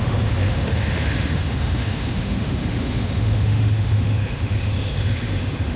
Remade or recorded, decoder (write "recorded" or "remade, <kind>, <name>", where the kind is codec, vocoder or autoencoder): remade, autoencoder, DAC-VAE